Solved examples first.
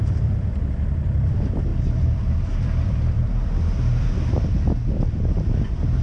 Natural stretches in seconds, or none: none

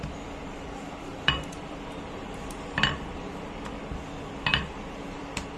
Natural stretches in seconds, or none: 0.0-1.1; 3.8-4.5

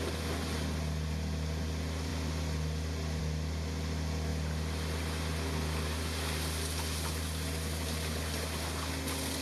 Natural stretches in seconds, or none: 0.0-9.4

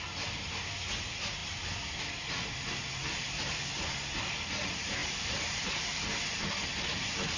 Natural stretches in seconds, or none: 0.0-5.0; 5.7-7.4